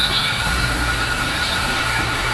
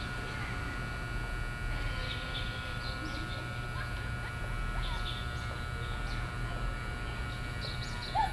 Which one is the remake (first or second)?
first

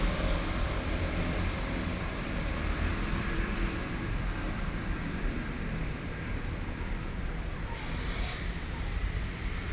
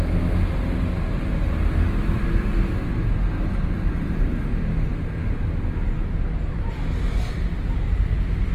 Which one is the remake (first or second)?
first